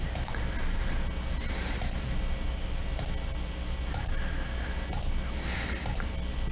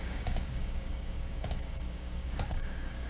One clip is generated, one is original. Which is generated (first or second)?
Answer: second